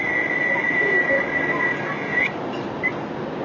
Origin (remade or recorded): recorded